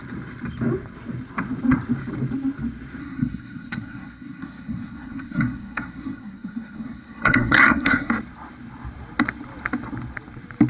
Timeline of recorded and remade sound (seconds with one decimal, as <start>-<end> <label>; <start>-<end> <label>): 0.0-3.0 recorded; 3.0-8.1 remade; 8.1-10.7 recorded